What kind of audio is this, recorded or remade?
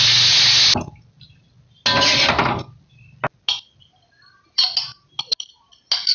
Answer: recorded